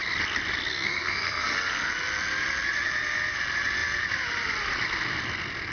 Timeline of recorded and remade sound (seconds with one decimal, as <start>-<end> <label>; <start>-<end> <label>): 0.0-0.7 recorded; 0.7-1.9 remade; 1.9-5.7 recorded